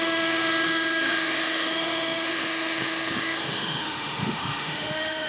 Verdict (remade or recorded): remade